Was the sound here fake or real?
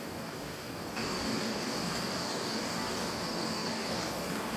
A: fake